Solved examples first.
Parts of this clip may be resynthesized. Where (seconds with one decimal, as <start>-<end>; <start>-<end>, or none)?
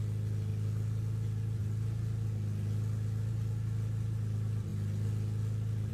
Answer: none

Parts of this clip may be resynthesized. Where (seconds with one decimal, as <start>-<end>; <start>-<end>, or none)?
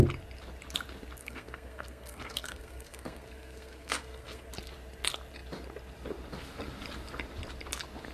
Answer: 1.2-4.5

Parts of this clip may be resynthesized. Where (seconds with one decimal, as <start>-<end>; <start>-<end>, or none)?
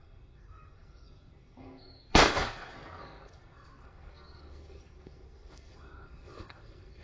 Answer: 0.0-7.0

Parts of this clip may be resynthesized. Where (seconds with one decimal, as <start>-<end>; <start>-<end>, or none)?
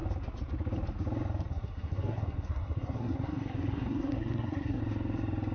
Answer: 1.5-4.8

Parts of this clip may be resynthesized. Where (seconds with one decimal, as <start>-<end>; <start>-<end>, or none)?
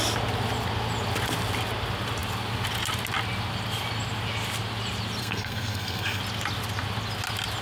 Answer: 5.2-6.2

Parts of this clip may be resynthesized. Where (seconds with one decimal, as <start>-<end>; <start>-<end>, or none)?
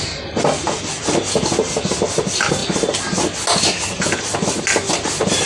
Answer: none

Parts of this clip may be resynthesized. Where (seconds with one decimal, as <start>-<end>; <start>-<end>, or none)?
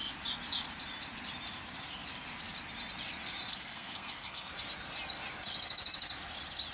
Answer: 3.5-4.5